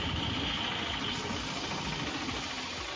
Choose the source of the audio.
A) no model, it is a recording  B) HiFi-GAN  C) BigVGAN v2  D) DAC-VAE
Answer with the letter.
A